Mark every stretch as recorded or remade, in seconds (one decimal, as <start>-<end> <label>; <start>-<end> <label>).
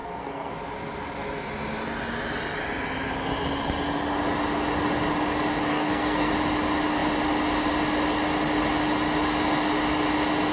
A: 0.0-0.5 remade; 0.5-5.7 recorded; 5.7-6.3 remade; 6.3-10.5 recorded